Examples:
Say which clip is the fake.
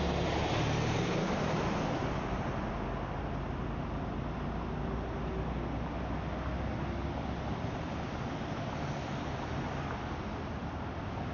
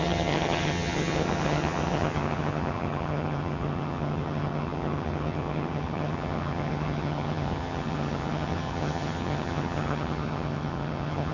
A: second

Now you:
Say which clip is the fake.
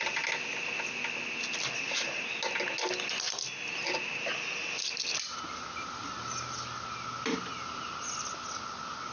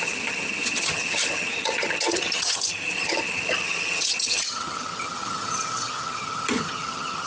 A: second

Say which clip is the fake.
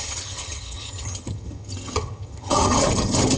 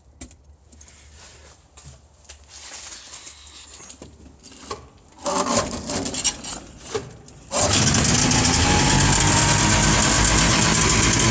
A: first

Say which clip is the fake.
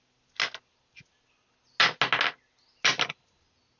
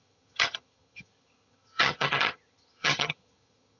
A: second